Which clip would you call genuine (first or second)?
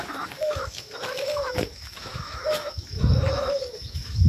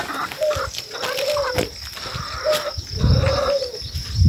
second